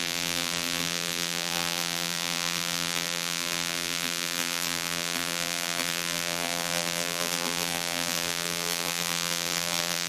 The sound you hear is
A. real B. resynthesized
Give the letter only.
B